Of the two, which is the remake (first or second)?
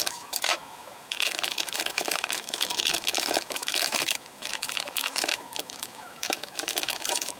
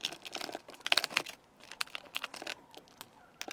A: first